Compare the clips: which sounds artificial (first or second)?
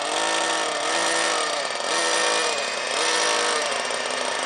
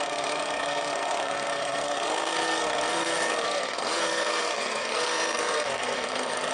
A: second